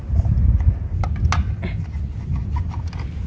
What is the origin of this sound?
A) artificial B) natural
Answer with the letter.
B